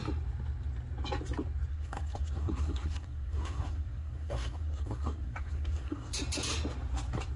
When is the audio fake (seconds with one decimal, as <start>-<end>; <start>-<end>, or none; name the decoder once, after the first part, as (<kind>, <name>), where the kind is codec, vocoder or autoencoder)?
1.7-6.1 (codec, SNAC)